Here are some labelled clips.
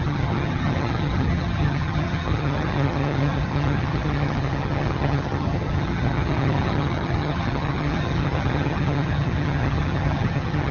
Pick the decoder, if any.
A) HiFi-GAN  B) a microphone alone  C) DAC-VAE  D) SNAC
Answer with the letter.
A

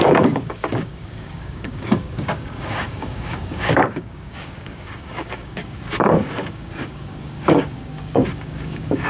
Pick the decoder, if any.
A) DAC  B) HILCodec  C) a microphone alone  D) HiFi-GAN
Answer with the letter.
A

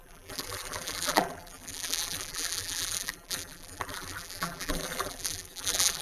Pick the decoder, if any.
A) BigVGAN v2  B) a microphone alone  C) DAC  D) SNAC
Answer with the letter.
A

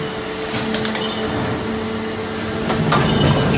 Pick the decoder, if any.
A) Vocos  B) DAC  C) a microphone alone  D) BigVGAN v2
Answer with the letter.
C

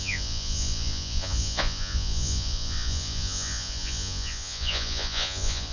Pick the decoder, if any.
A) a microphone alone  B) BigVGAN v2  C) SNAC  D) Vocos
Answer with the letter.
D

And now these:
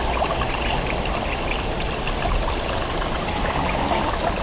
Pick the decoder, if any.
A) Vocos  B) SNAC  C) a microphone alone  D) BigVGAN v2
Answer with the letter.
C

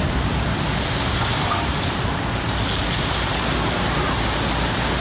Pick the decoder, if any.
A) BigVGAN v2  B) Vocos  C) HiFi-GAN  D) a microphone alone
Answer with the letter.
D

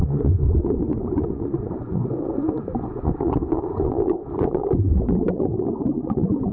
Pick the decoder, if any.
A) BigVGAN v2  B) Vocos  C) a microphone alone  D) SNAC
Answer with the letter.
B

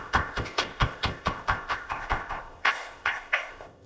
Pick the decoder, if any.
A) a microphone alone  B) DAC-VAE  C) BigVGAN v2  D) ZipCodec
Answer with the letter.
D